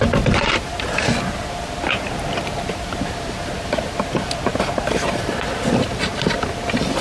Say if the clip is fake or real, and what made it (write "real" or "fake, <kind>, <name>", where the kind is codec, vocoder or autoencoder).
real